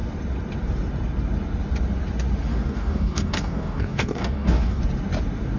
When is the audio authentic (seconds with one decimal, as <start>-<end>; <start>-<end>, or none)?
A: 0.0-2.5; 4.8-5.6